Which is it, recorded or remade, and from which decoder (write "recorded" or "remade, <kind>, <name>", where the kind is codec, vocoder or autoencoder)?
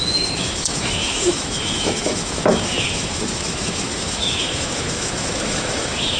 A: remade, autoencoder, DAC-VAE